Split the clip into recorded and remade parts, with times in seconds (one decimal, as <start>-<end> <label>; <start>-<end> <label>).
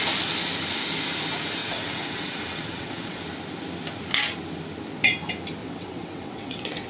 0.0-1.6 recorded; 1.6-3.2 remade; 3.2-5.6 recorded; 5.6-6.9 remade